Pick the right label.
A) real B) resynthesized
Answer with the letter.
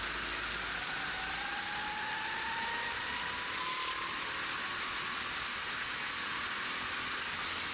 A